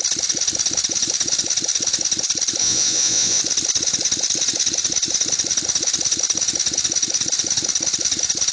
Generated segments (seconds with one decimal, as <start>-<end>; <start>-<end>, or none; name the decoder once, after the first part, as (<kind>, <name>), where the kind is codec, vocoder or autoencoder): 2.6-3.4 (vocoder, Vocos)